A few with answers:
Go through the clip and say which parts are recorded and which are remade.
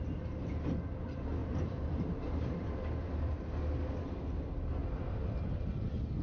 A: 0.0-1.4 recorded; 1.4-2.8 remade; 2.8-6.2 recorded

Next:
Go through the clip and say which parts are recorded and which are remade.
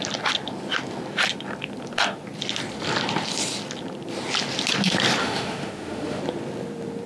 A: 0.0-5.2 recorded; 5.2-6.2 remade; 6.2-7.1 recorded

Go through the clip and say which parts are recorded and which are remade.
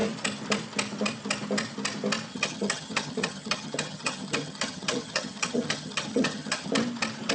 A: 0.0-2.3 recorded; 2.3-6.7 remade; 6.7-7.3 recorded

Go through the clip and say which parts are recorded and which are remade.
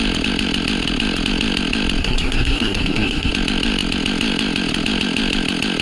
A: 0.0-2.0 recorded; 2.0-3.3 remade; 3.3-5.8 recorded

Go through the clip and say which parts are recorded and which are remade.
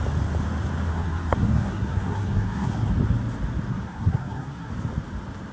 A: 0.0-0.9 recorded; 0.9-2.9 remade; 2.9-3.7 recorded; 3.7-4.7 remade; 4.7-5.5 recorded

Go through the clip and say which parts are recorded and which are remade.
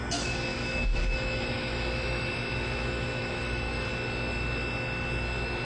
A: 0.0-0.5 recorded; 0.5-3.9 remade; 3.9-5.6 recorded